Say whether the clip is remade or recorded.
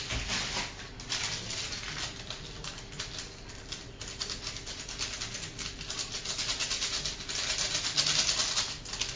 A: recorded